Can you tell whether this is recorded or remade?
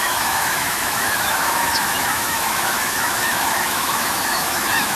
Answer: remade